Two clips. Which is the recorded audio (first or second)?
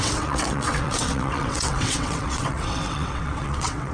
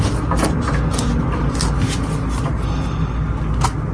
second